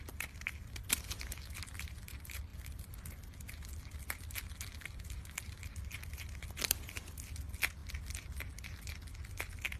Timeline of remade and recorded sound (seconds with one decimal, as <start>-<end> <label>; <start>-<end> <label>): 0.0-9.8 recorded

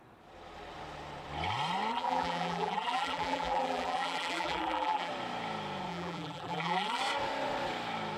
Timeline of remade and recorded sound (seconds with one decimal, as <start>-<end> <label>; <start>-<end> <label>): 0.0-1.9 recorded; 1.9-5.1 remade; 5.1-5.9 recorded; 5.9-7.0 remade; 7.0-8.2 recorded